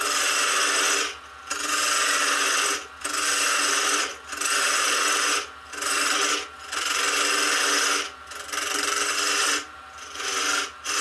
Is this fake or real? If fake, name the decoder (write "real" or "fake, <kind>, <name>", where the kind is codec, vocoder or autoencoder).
real